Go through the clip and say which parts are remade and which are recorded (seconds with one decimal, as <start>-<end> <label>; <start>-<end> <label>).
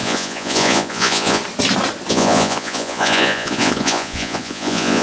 0.0-1.4 remade; 1.4-2.1 recorded; 2.1-5.0 remade